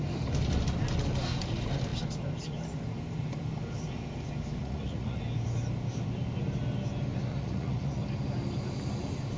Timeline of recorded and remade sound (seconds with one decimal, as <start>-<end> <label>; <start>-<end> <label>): 0.0-4.6 recorded; 4.6-5.2 remade; 5.2-7.3 recorded; 7.3-8.0 remade; 8.0-9.4 recorded